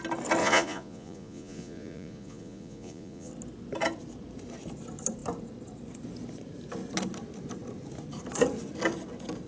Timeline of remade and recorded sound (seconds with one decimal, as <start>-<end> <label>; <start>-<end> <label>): 0.0-0.4 recorded; 0.4-3.3 remade; 3.3-9.5 recorded